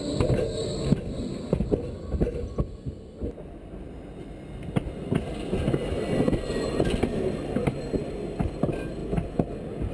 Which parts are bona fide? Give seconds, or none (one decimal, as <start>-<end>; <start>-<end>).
0.0-9.9